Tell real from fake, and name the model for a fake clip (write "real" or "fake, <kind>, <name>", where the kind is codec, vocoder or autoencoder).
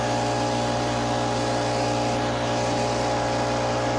real